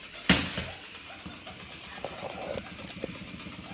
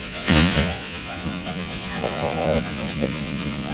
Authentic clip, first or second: first